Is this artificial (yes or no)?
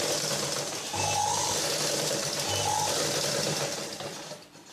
no